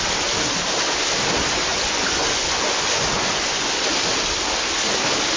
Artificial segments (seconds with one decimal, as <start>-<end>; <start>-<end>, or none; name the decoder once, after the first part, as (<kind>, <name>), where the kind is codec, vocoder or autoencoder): 1.7-3.8 (vocoder, Vocos)